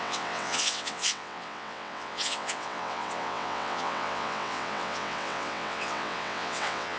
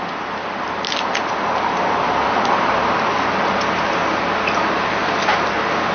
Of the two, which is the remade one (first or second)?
first